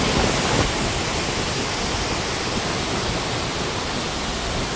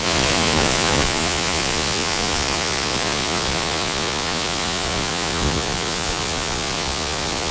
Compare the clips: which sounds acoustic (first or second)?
first